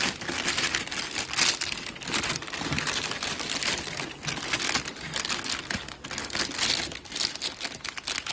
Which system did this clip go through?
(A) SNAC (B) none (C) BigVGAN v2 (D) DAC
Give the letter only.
B